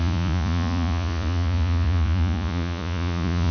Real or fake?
fake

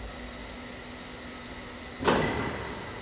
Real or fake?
real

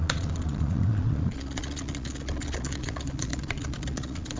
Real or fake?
fake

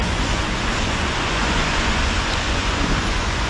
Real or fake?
fake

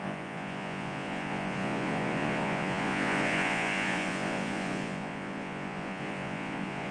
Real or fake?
fake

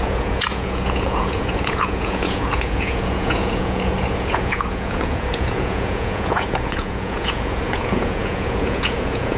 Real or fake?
fake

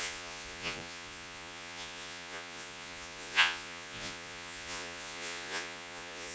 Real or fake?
fake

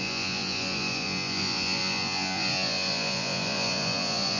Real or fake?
fake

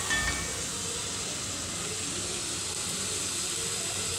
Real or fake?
real